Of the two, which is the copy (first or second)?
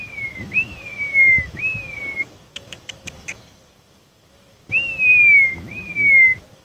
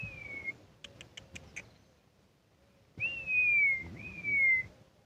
first